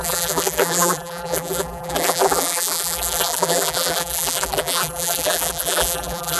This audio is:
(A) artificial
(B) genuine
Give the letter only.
A